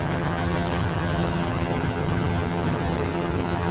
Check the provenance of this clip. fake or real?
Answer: fake